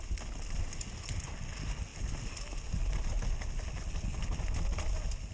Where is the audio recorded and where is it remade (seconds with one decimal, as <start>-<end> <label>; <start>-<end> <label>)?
0.0-5.3 recorded

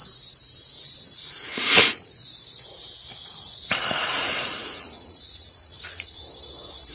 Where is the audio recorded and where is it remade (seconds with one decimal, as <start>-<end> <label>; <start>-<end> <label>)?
0.0-1.0 recorded; 1.0-2.2 remade; 2.2-3.2 recorded; 3.2-6.2 remade; 6.2-6.9 recorded

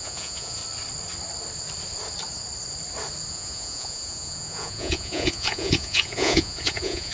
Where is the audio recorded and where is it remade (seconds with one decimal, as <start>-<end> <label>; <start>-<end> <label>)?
0.0-0.6 remade; 0.6-3.3 recorded; 3.3-7.1 remade

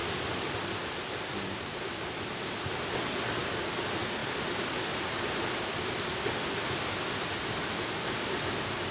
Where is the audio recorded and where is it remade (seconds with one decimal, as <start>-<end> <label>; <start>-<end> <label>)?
0.0-8.9 recorded

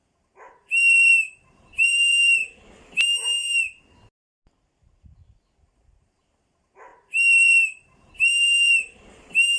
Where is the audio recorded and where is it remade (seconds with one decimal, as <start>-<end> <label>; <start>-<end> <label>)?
0.0-2.4 remade; 2.4-5.6 recorded; 5.6-9.6 remade

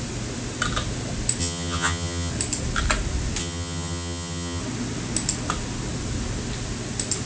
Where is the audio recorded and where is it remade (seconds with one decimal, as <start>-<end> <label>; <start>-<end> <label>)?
0.0-1.4 recorded; 1.4-2.3 remade; 2.3-3.4 recorded; 3.4-4.6 remade; 4.6-7.3 recorded